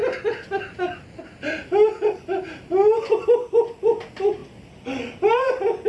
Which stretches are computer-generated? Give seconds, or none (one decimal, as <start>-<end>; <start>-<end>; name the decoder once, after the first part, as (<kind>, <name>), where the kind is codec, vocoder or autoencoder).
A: none